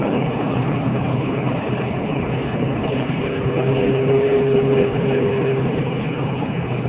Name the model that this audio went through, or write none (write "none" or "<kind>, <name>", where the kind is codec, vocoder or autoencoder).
codec, HILCodec